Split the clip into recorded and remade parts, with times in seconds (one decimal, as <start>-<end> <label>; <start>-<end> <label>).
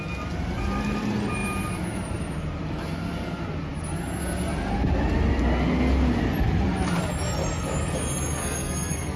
0.0-8.4 recorded; 8.4-9.2 remade